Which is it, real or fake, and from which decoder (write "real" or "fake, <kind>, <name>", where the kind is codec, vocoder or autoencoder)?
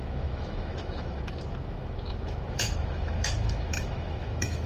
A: fake, autoencoder, DAC-VAE